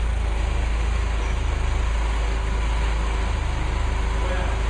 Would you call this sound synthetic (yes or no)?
no